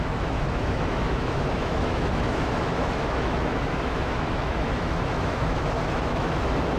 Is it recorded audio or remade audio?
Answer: remade